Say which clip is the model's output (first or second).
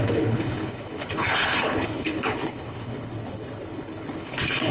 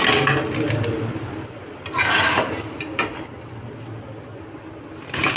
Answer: first